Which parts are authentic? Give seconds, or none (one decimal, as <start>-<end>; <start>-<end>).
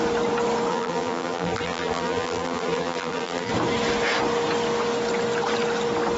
0.0-0.7; 3.5-6.2